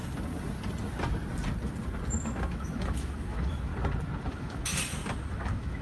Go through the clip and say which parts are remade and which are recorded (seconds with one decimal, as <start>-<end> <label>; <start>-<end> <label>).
0.0-2.2 recorded; 2.2-3.7 remade; 3.7-4.3 recorded; 4.3-4.7 remade; 4.7-5.3 recorded; 5.3-5.8 remade